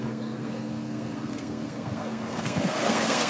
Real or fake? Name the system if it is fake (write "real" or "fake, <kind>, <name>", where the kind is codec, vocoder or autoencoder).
fake, codec, SNAC